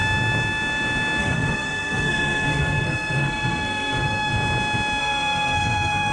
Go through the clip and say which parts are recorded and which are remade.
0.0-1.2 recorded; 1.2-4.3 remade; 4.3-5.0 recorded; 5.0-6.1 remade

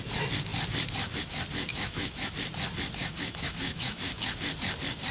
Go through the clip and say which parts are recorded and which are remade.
0.0-1.7 recorded; 1.7-2.3 remade; 2.3-3.0 recorded; 3.0-4.2 remade; 4.2-5.1 recorded

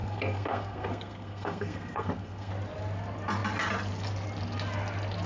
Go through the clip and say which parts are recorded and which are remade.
0.0-2.5 remade; 2.5-5.3 recorded

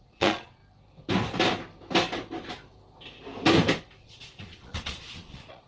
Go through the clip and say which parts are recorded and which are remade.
0.0-0.6 remade; 0.6-4.0 recorded; 4.0-5.7 remade

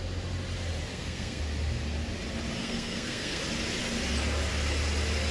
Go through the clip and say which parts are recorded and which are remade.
0.0-0.9 recorded; 0.9-1.4 remade; 1.4-2.6 recorded; 2.6-3.4 remade; 3.4-5.3 recorded

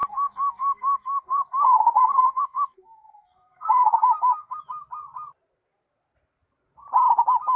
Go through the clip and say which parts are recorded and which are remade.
0.0-4.6 remade; 4.6-7.6 recorded

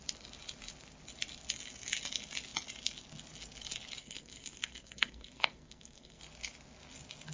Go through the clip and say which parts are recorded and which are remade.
0.0-4.0 recorded; 4.0-6.2 remade; 6.2-7.3 recorded

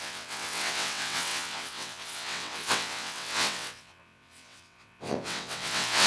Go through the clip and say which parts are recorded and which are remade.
0.0-6.1 remade